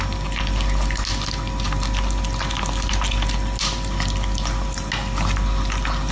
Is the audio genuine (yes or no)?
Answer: yes